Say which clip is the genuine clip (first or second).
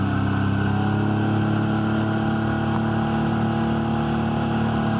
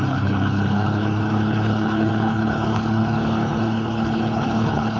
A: first